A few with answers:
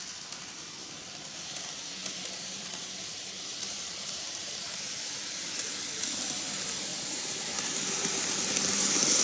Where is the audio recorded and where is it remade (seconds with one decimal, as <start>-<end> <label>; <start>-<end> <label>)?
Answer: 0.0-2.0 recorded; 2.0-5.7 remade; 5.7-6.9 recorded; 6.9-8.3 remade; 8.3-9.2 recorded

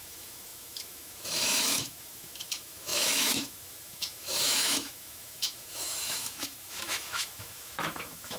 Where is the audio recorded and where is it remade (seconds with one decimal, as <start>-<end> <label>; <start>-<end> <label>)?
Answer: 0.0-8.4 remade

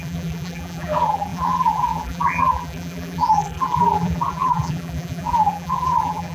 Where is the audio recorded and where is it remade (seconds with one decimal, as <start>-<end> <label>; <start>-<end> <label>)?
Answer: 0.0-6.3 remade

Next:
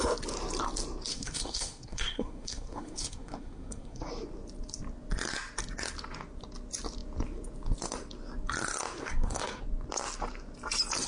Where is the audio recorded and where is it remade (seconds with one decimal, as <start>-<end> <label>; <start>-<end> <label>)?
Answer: 0.0-1.1 recorded; 1.1-4.1 remade; 4.1-9.0 recorded; 9.0-9.6 remade; 9.6-11.1 recorded

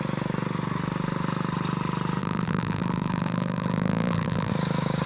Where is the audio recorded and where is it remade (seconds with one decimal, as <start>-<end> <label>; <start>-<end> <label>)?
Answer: 0.0-2.2 recorded; 2.2-4.5 remade; 4.5-5.1 recorded

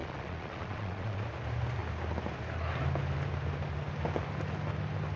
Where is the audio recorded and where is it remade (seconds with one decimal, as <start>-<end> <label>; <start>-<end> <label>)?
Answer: 0.0-1.2 remade; 1.2-5.2 recorded

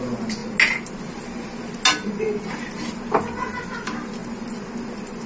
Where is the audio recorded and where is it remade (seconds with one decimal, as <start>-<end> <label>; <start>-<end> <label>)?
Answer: 0.0-5.3 recorded